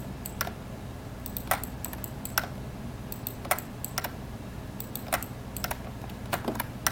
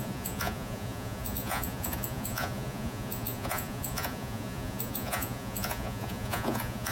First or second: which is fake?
second